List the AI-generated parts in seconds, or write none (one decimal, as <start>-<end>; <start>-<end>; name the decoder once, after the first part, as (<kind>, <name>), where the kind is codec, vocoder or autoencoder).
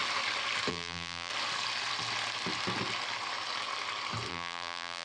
0.7-1.3 (vocoder, BigVGAN v2); 4.3-5.0